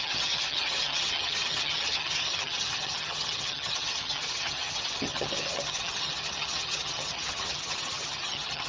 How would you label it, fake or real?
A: fake